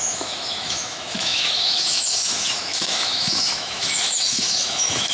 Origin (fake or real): fake